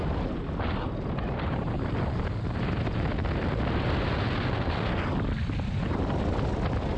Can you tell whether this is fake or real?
real